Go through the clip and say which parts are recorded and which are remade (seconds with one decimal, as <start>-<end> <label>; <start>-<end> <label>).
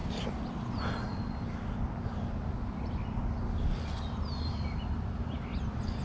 0.0-6.0 recorded